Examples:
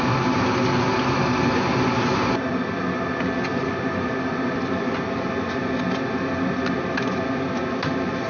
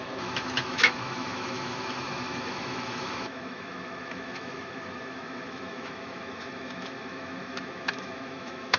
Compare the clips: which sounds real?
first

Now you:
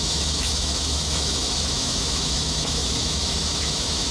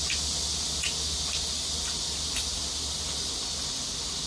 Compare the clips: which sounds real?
second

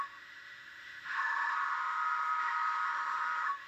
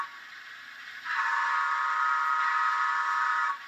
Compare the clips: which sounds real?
second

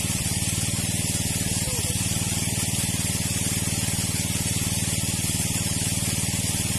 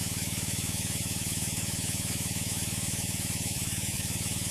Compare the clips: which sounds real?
first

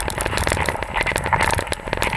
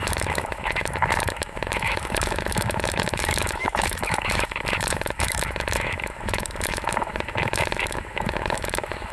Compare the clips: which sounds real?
first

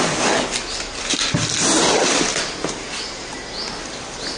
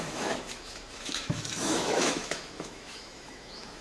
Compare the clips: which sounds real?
first